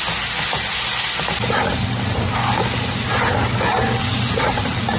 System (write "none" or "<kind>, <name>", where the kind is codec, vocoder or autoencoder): none